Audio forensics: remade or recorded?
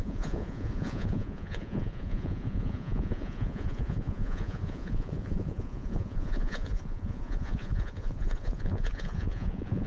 remade